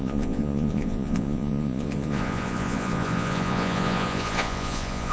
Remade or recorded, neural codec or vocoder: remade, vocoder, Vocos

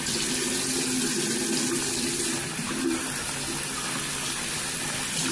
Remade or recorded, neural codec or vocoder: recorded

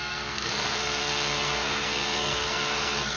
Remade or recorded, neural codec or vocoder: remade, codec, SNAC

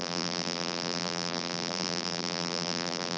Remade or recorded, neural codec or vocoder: remade, vocoder, BigVGAN v2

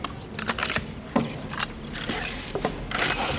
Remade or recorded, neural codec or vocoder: recorded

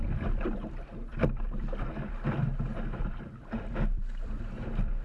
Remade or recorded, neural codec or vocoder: remade, vocoder, BigVGAN v2